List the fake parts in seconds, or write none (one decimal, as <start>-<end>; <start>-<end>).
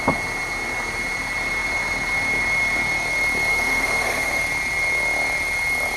3.5-4.4